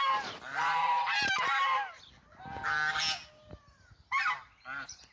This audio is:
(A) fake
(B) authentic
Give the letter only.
B